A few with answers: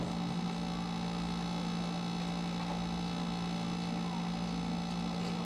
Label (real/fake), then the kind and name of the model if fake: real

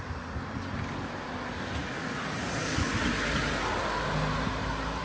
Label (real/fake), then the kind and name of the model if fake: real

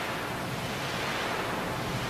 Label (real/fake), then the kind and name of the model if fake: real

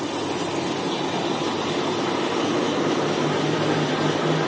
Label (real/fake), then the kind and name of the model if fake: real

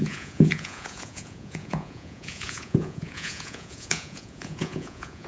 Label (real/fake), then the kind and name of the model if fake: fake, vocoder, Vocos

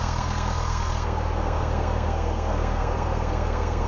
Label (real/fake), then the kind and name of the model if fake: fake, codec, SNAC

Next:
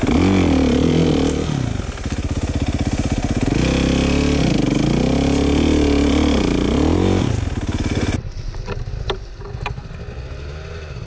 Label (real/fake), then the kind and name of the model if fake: real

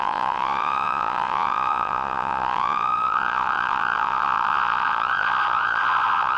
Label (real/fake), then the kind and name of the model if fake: fake, vocoder, Vocos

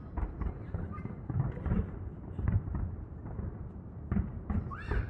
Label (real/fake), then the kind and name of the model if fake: fake, vocoder, BigVGAN v2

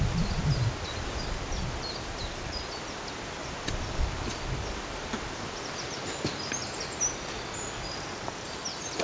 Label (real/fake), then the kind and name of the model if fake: real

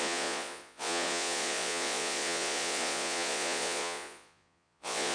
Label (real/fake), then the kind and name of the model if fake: fake, vocoder, Vocos